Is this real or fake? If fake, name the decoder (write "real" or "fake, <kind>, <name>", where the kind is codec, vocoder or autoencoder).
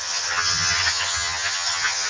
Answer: fake, vocoder, HiFi-GAN